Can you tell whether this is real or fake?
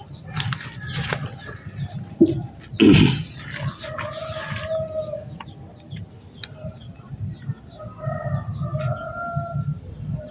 real